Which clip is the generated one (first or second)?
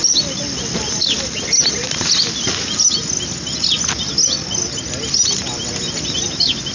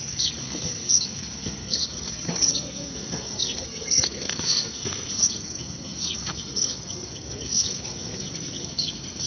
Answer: second